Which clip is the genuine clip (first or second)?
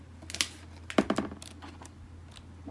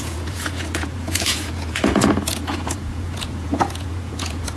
first